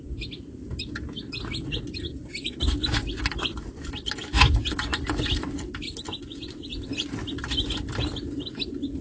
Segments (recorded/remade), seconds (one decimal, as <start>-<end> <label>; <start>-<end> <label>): 0.0-9.0 recorded